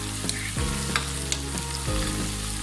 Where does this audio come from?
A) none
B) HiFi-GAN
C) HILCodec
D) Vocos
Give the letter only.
A